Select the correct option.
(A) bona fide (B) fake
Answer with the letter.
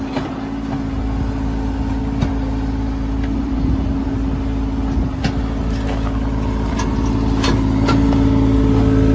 A